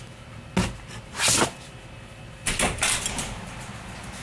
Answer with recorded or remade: recorded